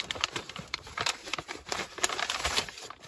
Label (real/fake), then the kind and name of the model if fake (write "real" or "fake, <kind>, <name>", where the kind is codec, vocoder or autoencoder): fake, vocoder, BigVGAN v2